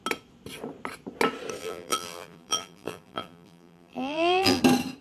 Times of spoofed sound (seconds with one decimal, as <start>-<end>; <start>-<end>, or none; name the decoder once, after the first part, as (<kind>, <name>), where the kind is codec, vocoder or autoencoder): 1.6-4.6 (vocoder, BigVGAN v2)